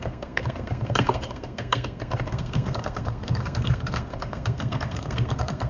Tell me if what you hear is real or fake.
fake